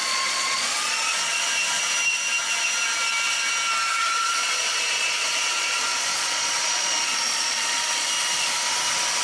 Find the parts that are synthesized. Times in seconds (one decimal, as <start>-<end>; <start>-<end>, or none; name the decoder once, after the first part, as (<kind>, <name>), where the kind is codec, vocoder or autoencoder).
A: 0.0-1.4 (vocoder, Vocos); 3.9-8.1

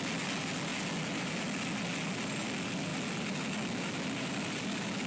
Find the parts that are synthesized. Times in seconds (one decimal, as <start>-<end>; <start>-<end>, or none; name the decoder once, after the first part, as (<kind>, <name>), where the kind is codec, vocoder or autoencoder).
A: none

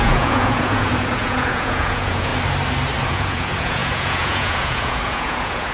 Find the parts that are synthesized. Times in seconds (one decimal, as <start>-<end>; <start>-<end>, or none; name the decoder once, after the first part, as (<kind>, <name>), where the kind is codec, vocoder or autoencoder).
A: 0.0-2.3 (vocoder, Vocos); 3.1-5.7

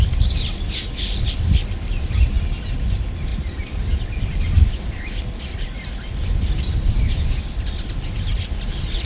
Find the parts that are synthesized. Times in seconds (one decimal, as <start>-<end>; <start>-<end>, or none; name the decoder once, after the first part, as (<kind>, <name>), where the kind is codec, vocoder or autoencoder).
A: none

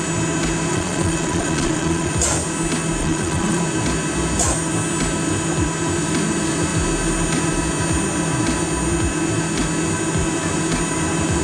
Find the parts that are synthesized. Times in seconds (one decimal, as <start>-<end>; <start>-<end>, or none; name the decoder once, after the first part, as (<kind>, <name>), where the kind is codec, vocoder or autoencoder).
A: 0.7-2.1 (vocoder, Vocos); 3.0-3.6

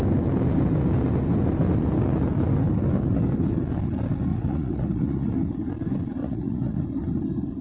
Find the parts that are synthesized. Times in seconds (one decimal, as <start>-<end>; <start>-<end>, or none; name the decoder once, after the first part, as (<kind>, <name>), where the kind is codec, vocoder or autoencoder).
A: 4.3-5.3 (vocoder, Vocos); 6.2-6.8

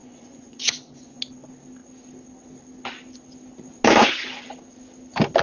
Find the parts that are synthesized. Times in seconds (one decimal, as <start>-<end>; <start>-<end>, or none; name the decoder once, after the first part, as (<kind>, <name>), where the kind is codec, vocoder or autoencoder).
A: 0.0-1.2 (vocoder, Vocos)

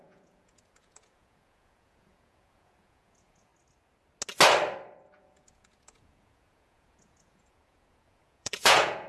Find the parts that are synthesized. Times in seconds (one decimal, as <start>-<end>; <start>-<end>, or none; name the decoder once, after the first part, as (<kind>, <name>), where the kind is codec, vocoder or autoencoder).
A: 0.0-3.5 (vocoder, Vocos); 5.2-9.1